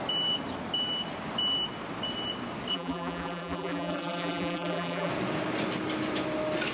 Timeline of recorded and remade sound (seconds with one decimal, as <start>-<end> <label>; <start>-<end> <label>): 0.0-2.7 recorded; 2.7-5.1 remade; 5.1-6.7 recorded